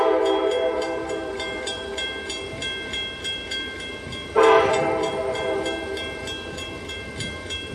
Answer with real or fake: fake